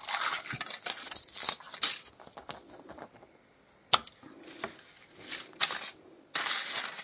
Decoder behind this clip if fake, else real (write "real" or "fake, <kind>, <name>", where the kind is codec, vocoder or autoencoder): real